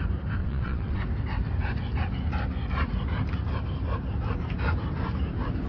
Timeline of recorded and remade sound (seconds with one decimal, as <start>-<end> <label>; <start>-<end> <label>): 0.0-0.4 recorded; 0.4-1.0 remade; 1.0-5.7 recorded